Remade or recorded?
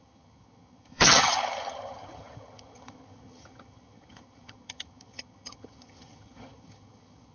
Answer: remade